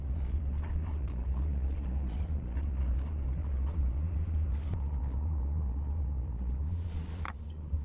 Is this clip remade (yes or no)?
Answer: yes